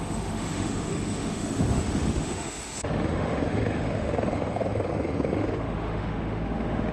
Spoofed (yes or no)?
yes